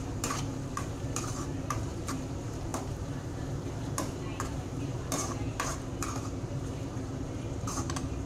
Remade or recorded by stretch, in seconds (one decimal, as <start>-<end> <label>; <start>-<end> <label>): 0.0-8.3 remade